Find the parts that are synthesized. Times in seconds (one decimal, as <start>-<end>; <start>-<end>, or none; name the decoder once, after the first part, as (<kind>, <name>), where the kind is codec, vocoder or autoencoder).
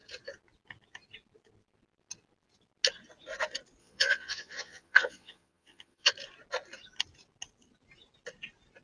3.8-6.1 (vocoder, Vocos)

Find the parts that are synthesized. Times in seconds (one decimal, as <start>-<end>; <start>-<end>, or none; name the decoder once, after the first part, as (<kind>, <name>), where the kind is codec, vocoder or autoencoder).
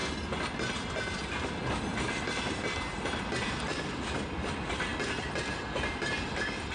none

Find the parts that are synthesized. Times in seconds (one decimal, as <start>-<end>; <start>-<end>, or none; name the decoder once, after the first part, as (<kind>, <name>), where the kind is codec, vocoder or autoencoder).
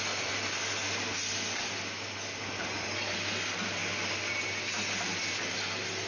none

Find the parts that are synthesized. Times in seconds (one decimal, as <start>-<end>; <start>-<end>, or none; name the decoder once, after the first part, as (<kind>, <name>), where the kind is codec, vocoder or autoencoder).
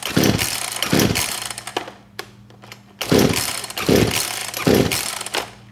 none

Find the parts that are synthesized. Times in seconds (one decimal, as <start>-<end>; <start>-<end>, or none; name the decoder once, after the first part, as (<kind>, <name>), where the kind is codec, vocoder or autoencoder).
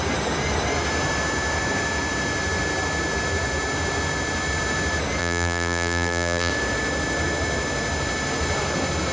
5.2-6.5 (vocoder, BigVGAN v2)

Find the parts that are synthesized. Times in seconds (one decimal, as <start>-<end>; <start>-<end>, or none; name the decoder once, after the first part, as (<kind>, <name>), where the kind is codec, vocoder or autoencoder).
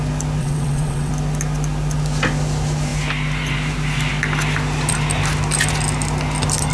0.4-1.1 (vocoder, WaveNeXt)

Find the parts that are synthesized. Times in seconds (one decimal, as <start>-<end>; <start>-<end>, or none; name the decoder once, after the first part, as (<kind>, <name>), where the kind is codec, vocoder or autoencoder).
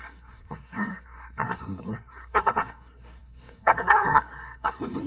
0.0-5.1 (codec, SNAC)